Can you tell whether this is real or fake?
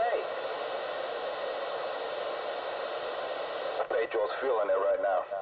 real